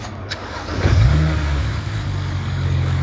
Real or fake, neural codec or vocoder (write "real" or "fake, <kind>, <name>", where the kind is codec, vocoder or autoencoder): fake, codec, DAC